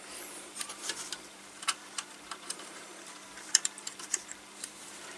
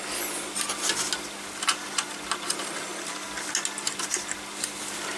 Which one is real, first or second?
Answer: second